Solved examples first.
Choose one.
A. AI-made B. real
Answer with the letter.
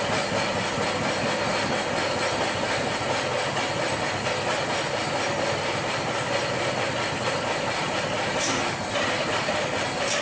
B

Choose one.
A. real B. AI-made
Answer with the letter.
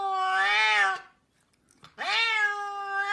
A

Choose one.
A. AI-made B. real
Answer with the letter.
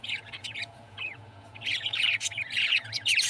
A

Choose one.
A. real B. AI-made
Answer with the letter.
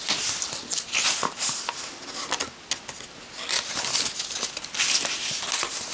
A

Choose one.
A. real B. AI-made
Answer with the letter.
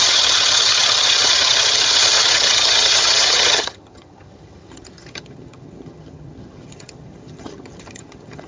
B